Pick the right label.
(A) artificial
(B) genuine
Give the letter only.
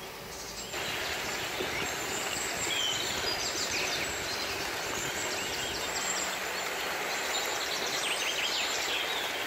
B